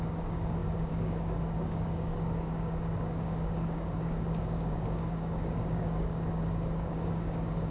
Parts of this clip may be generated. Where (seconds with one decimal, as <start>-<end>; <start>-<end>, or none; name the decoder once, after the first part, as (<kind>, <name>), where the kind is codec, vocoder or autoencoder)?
0.0-7.7 (codec, DAC)